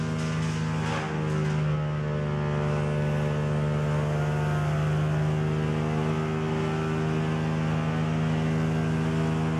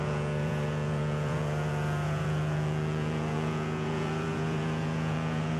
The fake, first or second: second